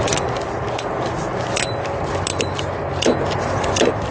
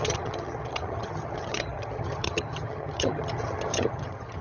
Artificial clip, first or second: second